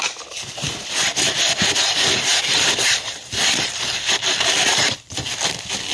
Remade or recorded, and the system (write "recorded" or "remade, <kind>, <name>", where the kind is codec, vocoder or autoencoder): remade, vocoder, BigVGAN v2